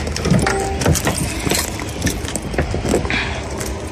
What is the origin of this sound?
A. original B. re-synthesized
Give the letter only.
A